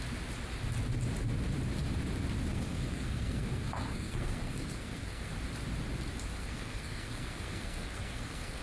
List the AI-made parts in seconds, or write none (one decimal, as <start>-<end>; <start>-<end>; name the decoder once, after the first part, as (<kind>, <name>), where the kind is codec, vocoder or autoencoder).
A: 2.5-5.3 (codec, SNAC); 6.4-8.6